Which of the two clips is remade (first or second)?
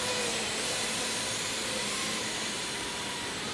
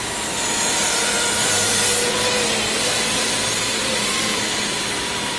first